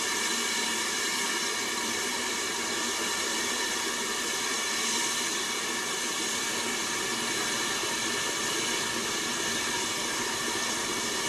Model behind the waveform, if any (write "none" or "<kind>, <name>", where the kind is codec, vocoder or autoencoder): vocoder, BigVGAN v2